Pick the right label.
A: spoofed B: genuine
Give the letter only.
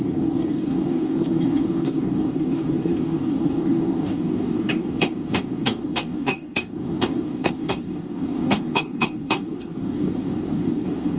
A